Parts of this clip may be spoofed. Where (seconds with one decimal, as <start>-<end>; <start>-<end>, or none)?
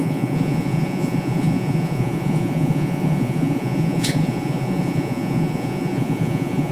0.0-6.7